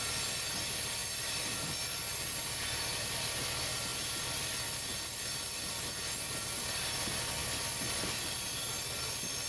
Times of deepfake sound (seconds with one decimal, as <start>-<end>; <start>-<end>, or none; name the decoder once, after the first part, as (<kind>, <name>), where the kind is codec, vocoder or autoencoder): none